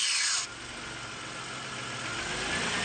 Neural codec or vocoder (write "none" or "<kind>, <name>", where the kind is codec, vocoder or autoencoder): none